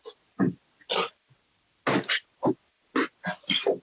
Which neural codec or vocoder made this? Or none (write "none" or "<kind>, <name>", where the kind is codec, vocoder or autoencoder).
none